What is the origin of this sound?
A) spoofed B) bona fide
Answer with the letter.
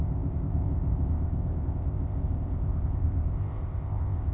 A